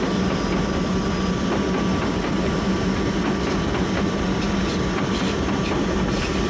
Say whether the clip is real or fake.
real